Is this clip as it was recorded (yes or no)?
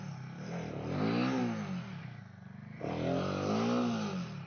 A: yes